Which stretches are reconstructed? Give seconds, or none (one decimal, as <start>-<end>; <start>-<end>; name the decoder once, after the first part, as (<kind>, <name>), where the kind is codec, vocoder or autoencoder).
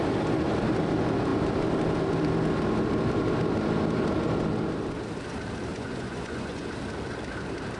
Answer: 5.7-6.7 (vocoder, Vocos)